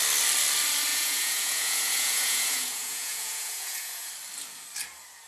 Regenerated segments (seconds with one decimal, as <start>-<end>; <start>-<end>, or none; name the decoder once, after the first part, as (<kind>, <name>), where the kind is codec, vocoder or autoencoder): 0.9-4.1 (vocoder, Vocos)

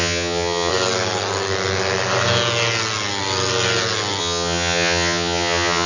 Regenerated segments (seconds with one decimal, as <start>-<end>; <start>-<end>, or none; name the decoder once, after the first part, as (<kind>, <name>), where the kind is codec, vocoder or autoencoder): 0.0-0.7 (vocoder, HiFi-GAN); 4.2-5.9

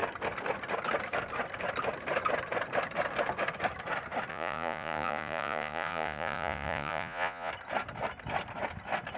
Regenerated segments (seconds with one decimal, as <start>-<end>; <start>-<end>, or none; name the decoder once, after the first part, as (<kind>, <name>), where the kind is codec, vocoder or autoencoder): 4.3-7.5 (vocoder, Vocos)

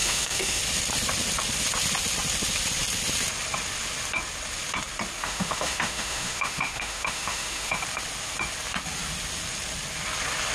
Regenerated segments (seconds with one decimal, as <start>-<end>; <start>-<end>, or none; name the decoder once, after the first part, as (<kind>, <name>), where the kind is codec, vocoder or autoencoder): 0.0-0.6 (autoencoder, DAC-VAE); 5.2-7.8

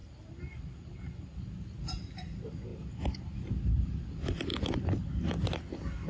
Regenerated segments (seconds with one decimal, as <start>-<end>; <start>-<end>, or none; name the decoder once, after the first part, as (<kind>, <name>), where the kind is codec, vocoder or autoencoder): none

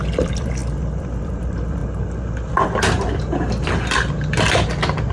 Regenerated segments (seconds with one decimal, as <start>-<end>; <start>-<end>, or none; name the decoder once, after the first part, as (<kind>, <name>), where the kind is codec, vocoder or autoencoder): 0.0-1.8 (vocoder, BigVGAN v2); 2.5-5.1

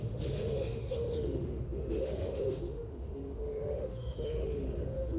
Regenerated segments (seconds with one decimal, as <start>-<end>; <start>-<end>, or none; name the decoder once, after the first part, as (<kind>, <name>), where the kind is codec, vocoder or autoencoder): 0.0-5.2 (autoencoder, DAC-VAE)

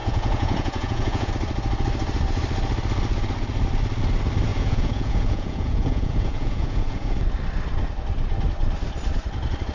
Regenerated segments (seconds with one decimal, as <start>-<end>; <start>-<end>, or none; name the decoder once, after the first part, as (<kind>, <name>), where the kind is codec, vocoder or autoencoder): 0.0-1.3 (vocoder, Vocos); 4.5-7.2